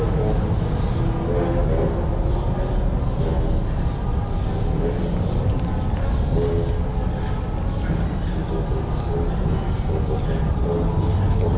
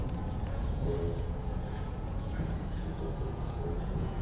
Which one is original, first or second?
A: first